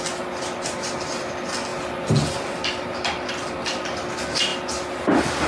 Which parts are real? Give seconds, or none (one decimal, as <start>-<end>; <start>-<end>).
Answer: 0.0-5.5